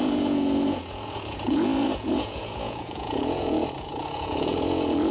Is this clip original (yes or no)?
no